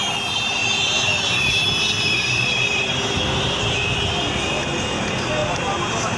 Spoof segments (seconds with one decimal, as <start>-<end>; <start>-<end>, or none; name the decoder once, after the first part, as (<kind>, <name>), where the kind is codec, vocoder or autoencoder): none